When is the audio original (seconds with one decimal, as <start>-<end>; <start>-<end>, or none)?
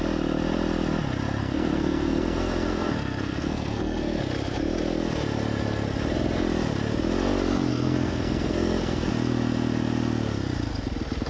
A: 0.0-1.4; 4.2-7.7; 9.1-11.3